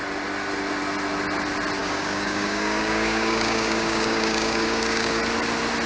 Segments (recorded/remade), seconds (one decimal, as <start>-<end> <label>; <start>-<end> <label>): 0.0-1.8 recorded; 1.8-5.2 remade; 5.2-5.9 recorded